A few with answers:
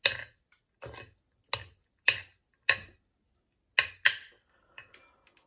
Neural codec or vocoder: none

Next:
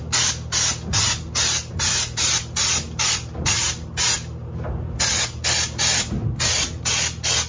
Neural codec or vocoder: none